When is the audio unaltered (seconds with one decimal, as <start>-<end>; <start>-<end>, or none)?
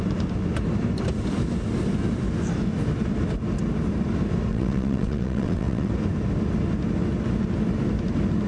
0.0-4.5; 5.9-8.5